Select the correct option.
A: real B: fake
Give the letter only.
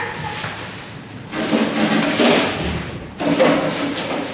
A